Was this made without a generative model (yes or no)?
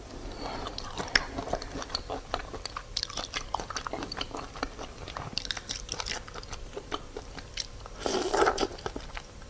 no